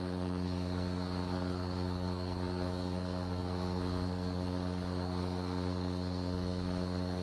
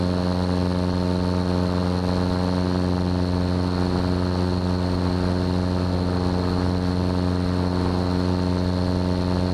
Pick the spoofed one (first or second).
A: first